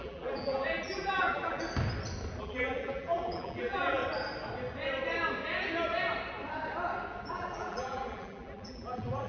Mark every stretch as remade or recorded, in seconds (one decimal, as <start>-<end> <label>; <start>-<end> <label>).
0.0-1.6 remade; 1.6-2.4 recorded; 2.4-4.0 remade; 4.0-7.3 recorded; 7.3-9.3 remade